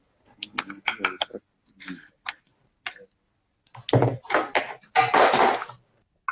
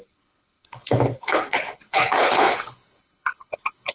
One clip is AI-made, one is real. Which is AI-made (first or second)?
second